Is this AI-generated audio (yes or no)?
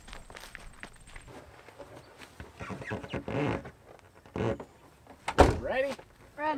no